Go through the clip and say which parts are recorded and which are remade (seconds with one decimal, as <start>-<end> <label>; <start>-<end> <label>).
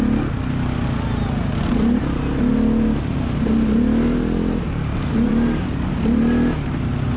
0.0-7.2 recorded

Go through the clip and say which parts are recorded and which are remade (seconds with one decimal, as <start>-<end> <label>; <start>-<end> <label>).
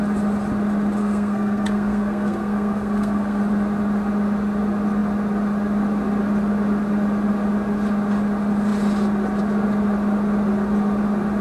0.0-1.0 recorded; 1.0-3.4 remade; 3.4-11.4 recorded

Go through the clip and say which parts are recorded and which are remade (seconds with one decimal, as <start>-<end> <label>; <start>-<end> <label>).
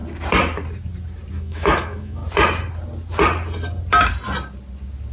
0.0-1.3 recorded; 1.3-2.2 remade; 2.2-5.1 recorded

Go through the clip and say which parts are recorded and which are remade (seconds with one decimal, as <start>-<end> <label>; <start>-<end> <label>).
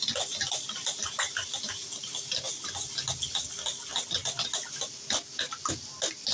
0.0-6.3 recorded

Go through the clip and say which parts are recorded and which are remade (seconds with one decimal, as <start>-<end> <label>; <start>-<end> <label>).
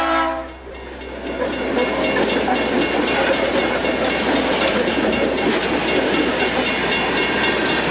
0.0-3.8 recorded; 3.8-5.8 remade; 5.8-7.9 recorded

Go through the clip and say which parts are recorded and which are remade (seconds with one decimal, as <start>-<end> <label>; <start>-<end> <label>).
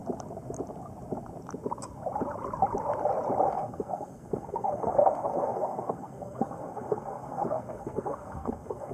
0.0-3.5 recorded; 3.5-8.9 remade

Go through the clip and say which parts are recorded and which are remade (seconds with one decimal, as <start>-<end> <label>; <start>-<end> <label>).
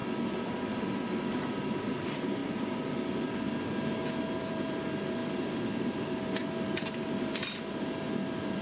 0.0-1.9 recorded; 1.9-2.4 remade; 2.4-4.4 recorded; 4.4-8.6 remade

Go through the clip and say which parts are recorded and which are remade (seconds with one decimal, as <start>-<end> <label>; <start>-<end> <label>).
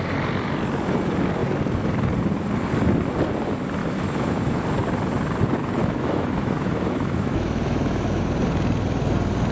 0.0-3.8 recorded; 3.8-4.3 remade; 4.3-5.8 recorded; 5.8-8.2 remade; 8.2-9.5 recorded